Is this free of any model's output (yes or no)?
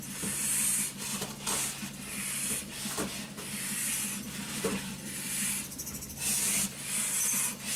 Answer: yes